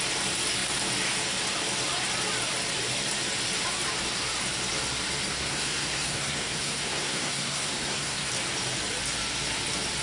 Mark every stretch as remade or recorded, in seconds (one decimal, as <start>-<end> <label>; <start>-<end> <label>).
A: 0.0-5.3 recorded; 5.3-8.3 remade; 8.3-10.0 recorded